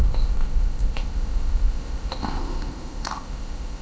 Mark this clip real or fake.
fake